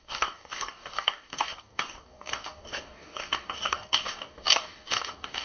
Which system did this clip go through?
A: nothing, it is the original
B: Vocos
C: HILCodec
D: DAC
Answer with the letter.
D